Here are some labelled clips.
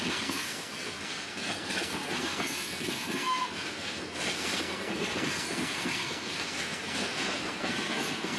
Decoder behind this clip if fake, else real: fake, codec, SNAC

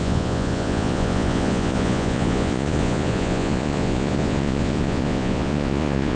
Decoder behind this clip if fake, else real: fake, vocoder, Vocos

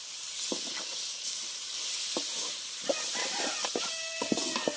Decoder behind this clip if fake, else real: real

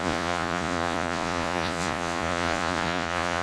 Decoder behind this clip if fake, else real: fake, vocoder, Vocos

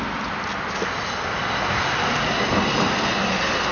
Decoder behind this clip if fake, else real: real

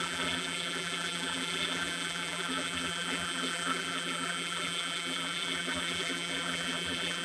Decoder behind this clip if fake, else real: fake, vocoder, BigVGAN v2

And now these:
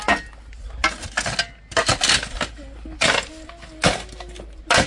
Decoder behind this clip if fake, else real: real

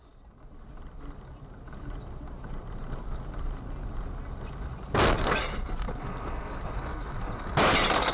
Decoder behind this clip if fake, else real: real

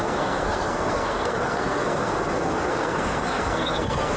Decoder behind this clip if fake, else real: fake, codec, SNAC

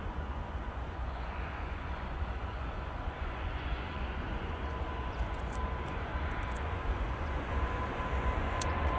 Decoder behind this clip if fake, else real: fake, vocoder, Vocos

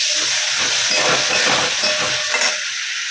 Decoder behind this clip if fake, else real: real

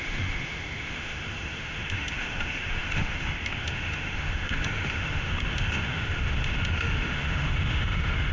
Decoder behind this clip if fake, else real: fake, autoencoder, DAC-VAE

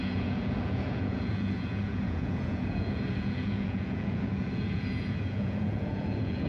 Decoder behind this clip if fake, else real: fake, vocoder, Vocos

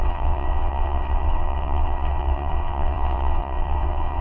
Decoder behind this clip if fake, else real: fake, vocoder, WaveNeXt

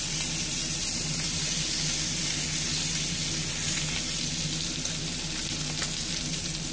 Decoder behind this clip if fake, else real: real